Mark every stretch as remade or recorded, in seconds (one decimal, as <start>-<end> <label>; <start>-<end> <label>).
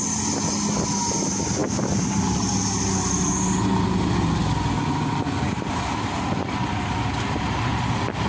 0.0-8.3 recorded